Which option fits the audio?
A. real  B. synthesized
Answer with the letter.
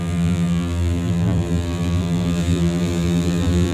B